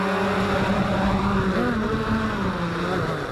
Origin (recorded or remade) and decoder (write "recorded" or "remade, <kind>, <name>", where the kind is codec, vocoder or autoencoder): recorded